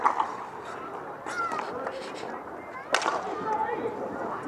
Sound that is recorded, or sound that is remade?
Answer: recorded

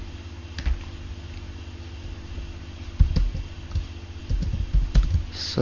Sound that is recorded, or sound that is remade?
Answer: recorded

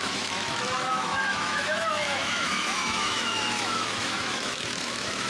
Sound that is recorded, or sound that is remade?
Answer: remade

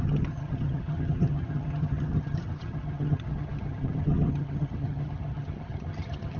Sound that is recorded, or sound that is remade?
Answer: remade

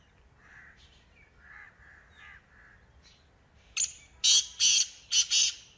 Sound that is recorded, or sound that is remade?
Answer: recorded